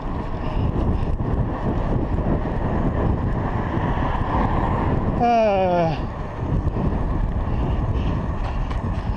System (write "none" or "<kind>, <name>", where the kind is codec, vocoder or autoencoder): none